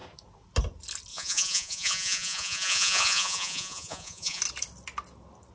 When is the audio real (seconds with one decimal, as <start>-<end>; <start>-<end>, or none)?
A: 0.0-1.1; 4.4-5.5